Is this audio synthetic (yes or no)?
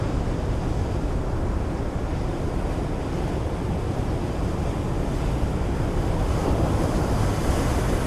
no